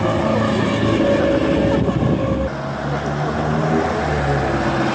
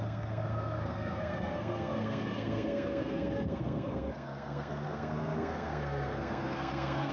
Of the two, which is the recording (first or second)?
first